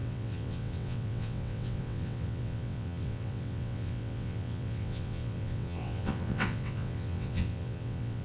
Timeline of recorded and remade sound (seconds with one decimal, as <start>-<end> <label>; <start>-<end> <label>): 0.0-8.2 remade